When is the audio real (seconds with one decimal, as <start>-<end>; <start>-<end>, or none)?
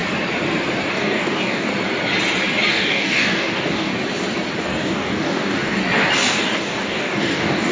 0.0-0.9; 1.7-2.7; 3.9-4.6; 5.8-6.3